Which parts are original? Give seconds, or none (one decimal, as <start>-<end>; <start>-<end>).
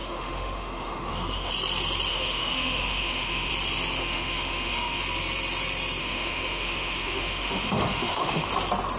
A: 1.5-2.1; 3.5-4.0; 5.0-6.0; 8.5-9.0